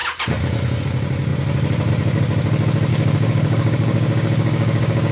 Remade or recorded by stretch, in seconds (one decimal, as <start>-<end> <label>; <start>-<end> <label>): 0.0-2.9 recorded; 2.9-5.1 remade